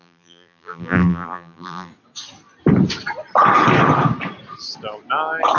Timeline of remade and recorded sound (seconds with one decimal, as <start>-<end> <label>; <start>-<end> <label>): 0.0-1.9 remade; 1.9-5.6 recorded